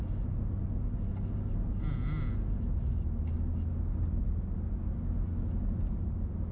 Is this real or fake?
real